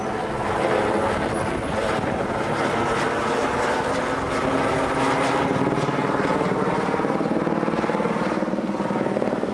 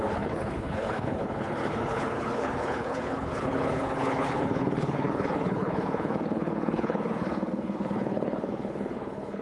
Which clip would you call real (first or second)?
first